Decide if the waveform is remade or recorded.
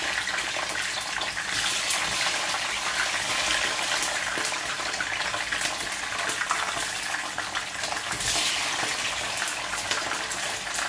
recorded